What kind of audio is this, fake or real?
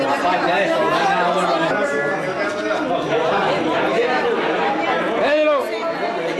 real